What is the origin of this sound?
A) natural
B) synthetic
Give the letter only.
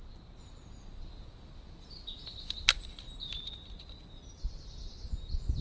A